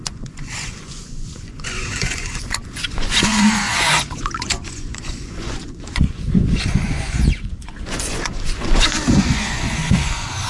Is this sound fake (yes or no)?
yes